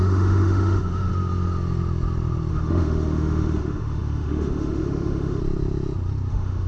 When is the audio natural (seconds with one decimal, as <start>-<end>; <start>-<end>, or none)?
1.1-2.5; 5.4-6.3